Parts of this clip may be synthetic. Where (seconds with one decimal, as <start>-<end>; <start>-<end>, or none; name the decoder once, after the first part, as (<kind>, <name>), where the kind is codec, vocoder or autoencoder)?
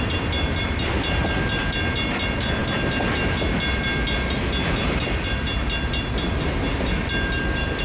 none